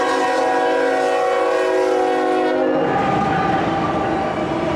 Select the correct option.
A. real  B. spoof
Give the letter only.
A